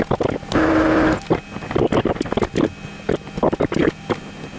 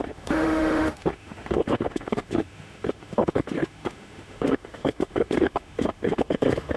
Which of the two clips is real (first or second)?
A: first